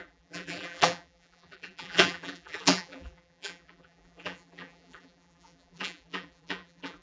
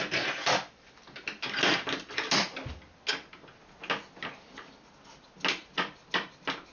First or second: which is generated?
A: first